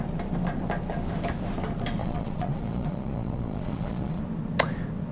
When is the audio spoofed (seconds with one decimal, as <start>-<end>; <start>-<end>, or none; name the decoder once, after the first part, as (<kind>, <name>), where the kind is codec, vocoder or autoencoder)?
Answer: 2.0-4.2 (vocoder, Vocos)